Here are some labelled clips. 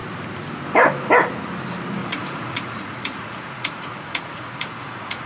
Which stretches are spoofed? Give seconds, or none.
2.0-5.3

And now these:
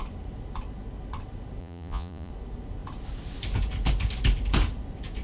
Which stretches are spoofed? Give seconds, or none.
1.6-2.3